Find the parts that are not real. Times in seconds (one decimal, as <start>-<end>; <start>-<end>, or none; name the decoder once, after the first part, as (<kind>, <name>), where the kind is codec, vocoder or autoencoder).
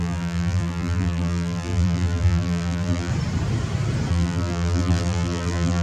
0.0-3.1 (vocoder, BigVGAN v2); 4.1-5.8